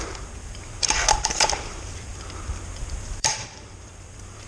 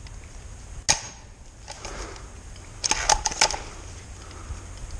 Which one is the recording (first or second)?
second